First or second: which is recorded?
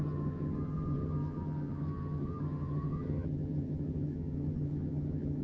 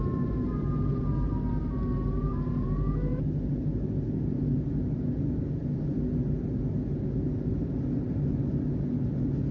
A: second